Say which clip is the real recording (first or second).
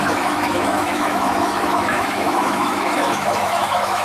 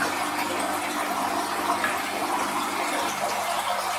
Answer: second